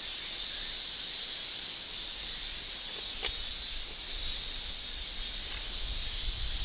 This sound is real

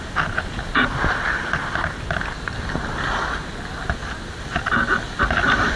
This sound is real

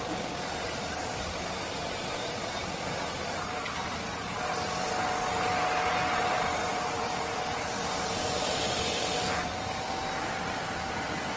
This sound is real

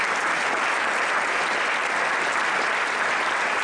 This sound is real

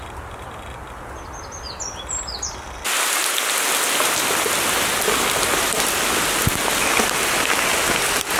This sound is real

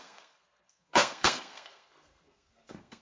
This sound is fake